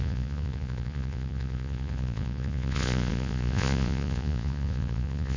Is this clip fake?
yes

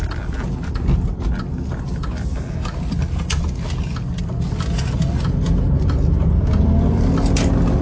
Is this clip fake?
no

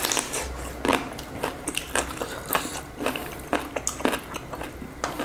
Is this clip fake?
no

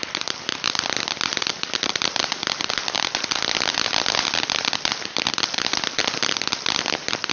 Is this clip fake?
no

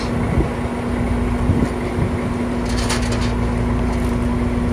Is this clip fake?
no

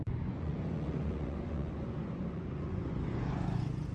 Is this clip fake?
yes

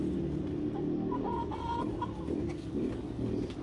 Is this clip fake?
no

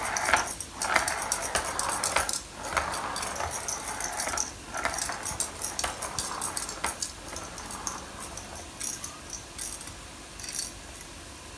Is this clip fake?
no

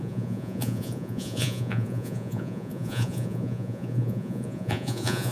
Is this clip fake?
yes